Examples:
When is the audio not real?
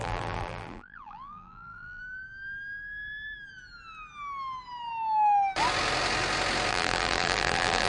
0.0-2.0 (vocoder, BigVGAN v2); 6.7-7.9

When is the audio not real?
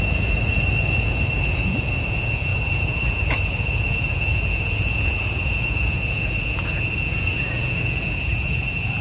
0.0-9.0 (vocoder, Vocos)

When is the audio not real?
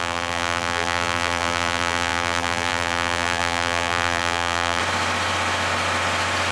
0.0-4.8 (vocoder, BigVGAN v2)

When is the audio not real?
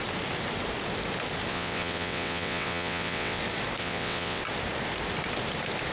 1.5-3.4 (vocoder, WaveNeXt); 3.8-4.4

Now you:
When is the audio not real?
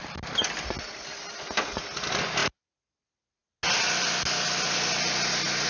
none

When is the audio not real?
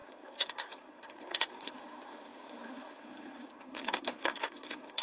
0.0-5.0 (codec, SNAC)